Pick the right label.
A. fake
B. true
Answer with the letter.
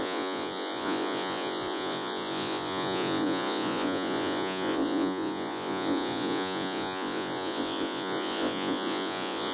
A